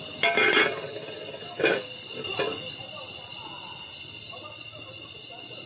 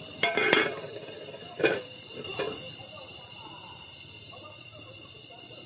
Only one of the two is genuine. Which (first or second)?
first